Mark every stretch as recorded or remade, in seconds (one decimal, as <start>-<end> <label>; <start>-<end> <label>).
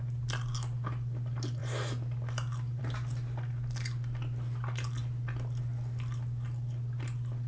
0.0-7.5 recorded